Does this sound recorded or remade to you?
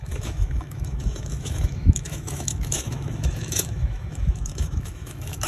remade